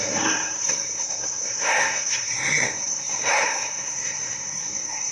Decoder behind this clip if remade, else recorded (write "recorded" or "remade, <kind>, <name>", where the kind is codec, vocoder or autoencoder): remade, codec, SNAC